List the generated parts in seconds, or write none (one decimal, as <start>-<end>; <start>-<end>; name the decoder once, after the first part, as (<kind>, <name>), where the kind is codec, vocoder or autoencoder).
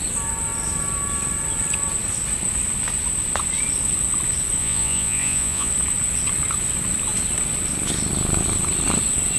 4.6-5.7 (vocoder, Vocos)